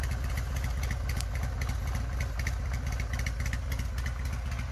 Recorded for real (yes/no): yes